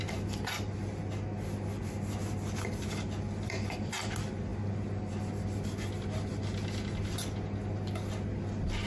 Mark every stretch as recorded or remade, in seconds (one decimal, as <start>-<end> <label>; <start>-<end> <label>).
0.0-8.9 recorded